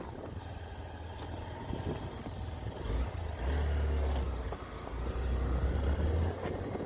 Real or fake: real